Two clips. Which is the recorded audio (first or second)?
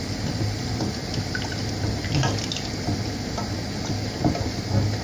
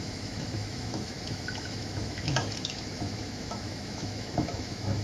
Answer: first